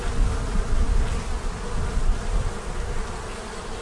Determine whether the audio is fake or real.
real